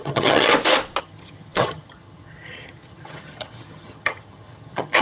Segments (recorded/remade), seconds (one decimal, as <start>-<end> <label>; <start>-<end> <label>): 0.0-0.5 remade; 0.5-1.0 recorded; 1.0-5.0 remade